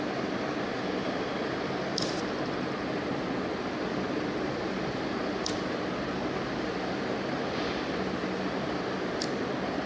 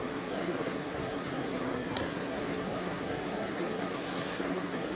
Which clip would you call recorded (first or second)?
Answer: first